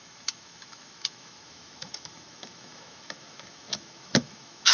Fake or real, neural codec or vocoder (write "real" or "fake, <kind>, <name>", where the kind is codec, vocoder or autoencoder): fake, autoencoder, DAC-VAE